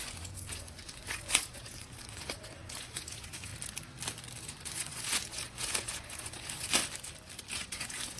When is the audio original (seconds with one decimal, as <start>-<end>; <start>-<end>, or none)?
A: 3.5-4.4; 6.8-7.5